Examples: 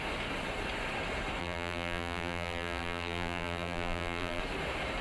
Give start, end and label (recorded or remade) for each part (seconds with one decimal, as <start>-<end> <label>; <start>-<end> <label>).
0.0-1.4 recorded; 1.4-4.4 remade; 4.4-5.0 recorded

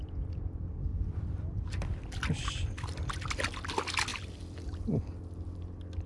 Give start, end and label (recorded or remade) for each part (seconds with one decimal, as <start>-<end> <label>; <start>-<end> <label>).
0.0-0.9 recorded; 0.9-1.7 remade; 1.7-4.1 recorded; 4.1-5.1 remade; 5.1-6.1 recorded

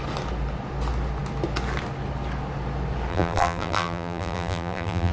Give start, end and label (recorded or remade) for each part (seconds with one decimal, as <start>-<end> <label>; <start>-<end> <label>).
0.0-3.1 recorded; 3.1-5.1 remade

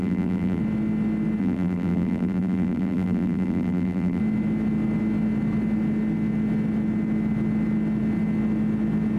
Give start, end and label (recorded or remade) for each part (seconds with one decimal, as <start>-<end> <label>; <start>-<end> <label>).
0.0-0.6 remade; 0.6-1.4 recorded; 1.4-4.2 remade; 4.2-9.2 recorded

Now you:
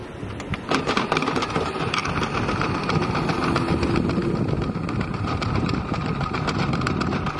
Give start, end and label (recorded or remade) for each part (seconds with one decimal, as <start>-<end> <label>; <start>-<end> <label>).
0.0-0.8 recorded; 0.8-2.0 remade; 2.0-4.9 recorded; 4.9-7.4 remade

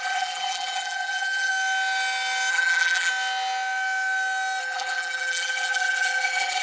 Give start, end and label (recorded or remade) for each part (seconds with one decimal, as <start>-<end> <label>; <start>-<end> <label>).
0.0-1.5 remade; 1.5-2.5 recorded; 2.5-3.1 remade; 3.1-4.6 recorded; 4.6-6.6 remade

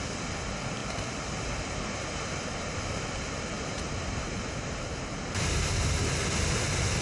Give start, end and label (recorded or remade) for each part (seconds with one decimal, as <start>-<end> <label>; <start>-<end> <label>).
0.0-0.8 recorded; 0.8-5.0 remade; 5.0-7.0 recorded